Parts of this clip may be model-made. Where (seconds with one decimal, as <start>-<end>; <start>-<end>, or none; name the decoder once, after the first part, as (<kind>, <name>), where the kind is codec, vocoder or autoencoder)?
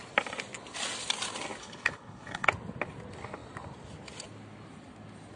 1.6-2.5 (codec, HILCodec)